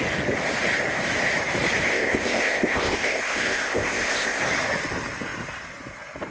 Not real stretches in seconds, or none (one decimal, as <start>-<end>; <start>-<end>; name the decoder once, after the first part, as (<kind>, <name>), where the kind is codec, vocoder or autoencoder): 1.9-4.4 (codec, ZipCodec)